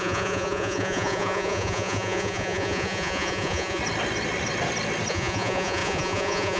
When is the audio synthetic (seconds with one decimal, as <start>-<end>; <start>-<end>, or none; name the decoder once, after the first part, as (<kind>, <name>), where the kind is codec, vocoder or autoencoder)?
0.0-3.8 (vocoder, Vocos); 5.1-6.6